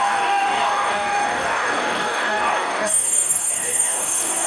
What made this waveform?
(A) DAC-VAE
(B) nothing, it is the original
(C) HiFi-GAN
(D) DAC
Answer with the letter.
D